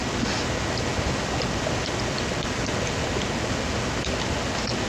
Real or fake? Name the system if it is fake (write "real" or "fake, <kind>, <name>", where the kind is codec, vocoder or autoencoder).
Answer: real